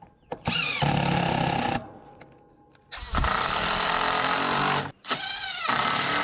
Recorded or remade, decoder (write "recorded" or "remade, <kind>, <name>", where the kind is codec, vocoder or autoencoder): recorded